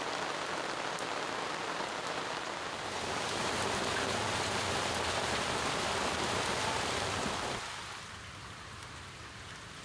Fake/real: fake